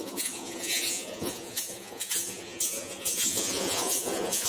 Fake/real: fake